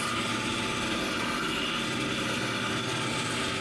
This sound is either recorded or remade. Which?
recorded